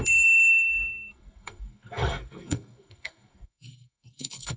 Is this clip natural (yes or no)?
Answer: no